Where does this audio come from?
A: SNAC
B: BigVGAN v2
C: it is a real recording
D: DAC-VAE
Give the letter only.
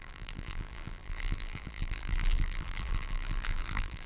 B